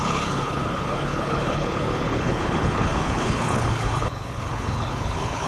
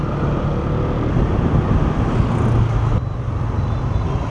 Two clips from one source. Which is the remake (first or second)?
first